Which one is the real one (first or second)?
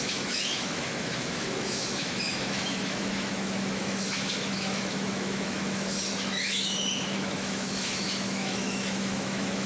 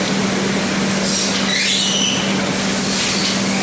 second